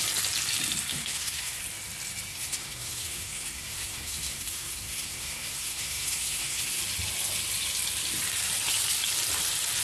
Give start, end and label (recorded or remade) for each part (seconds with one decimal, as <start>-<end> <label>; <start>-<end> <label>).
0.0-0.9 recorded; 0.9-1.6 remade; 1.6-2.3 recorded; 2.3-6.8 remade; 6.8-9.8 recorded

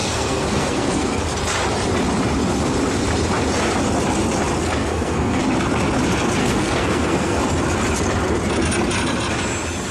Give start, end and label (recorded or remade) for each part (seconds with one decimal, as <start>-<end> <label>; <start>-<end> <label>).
0.0-1.2 remade; 1.2-4.8 recorded; 4.8-5.4 remade; 5.4-6.4 recorded; 6.4-7.4 remade; 7.4-9.9 recorded

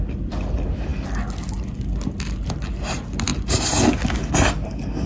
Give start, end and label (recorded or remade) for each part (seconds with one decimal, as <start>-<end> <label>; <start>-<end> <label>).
0.0-5.1 recorded

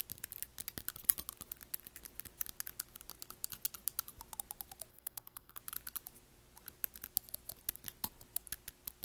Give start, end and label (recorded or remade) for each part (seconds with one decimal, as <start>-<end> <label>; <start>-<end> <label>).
0.0-4.9 recorded; 4.9-5.6 remade; 5.6-9.0 recorded

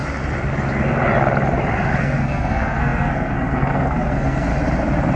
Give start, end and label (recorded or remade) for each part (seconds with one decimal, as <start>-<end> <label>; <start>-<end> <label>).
0.0-2.0 recorded; 2.0-4.5 remade; 4.5-5.2 recorded